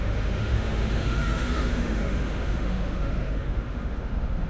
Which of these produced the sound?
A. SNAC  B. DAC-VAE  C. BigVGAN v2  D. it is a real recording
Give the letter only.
B